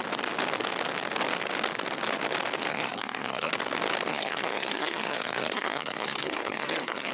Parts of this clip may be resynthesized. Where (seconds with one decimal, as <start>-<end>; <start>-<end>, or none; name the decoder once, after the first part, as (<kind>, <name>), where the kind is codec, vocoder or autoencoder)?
2.7-3.5 (codec, SNAC); 4.1-7.1